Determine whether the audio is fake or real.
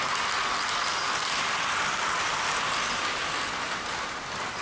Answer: real